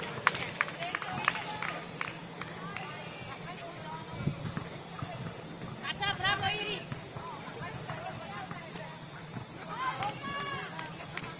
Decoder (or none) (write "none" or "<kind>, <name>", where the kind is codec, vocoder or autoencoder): none